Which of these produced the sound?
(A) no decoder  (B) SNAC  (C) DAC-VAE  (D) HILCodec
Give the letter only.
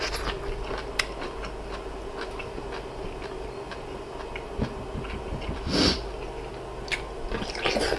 A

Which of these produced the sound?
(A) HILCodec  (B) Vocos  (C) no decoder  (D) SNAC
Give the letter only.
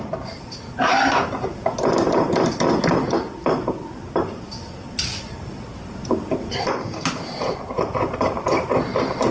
C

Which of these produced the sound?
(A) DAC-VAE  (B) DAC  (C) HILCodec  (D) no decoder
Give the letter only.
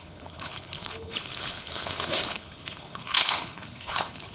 C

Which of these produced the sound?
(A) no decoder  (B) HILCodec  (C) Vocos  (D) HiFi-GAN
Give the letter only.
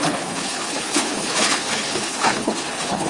B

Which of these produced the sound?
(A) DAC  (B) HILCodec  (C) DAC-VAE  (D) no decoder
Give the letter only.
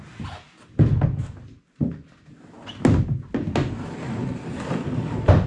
D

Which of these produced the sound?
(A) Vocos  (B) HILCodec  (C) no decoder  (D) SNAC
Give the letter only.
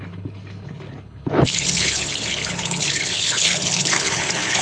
B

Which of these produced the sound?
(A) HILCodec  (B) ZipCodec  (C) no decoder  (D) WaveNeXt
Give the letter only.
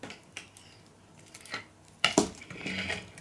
C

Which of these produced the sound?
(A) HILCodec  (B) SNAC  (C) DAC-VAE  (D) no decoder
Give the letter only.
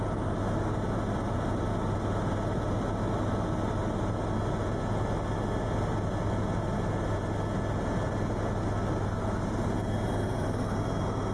D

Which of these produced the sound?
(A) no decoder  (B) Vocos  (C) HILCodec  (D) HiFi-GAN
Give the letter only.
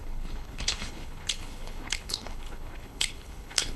C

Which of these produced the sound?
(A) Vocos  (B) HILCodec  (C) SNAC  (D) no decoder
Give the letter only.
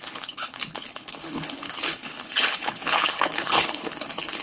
B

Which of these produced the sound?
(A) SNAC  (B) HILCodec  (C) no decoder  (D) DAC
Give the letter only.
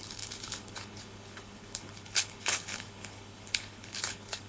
B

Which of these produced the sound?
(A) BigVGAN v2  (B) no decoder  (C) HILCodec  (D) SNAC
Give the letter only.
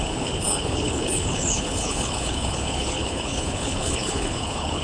C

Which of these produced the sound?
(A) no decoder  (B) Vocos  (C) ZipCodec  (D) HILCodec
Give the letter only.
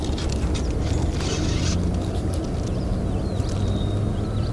A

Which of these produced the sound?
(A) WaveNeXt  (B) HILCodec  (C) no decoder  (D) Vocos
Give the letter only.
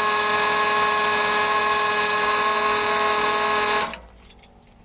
C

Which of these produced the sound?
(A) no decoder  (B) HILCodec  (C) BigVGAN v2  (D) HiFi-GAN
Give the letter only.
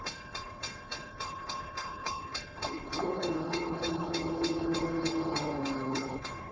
B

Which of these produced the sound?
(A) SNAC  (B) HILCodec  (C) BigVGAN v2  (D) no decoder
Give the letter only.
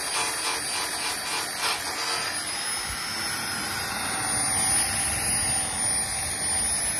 D